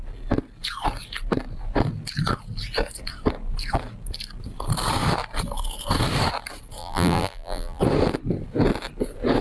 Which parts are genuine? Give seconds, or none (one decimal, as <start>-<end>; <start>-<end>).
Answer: 0.0-6.8; 7.8-9.4